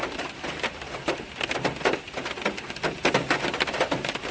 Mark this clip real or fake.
real